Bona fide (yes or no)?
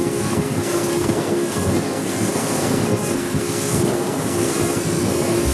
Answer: no